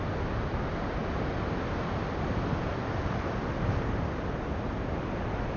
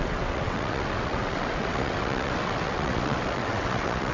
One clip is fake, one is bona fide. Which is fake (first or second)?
second